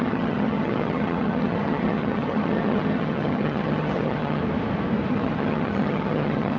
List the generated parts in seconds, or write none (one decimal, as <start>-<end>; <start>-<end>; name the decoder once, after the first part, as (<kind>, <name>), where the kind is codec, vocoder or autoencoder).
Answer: 0.0-4.4 (vocoder, HiFi-GAN); 5.1-6.6